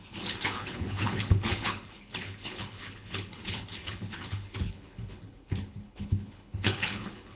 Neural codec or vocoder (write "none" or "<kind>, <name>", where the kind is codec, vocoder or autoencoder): codec, HILCodec